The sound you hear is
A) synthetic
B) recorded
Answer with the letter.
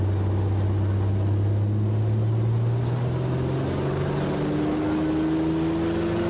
B